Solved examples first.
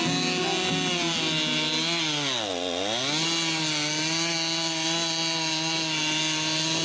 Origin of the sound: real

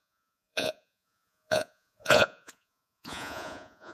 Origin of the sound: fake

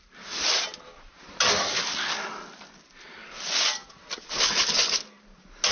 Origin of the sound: real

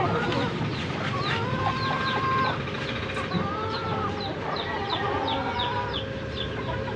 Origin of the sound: real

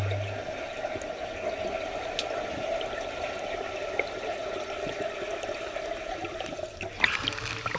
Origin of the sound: real